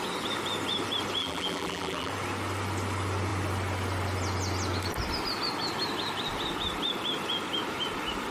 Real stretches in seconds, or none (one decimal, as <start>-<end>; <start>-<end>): 0.0-1.2; 2.1-8.3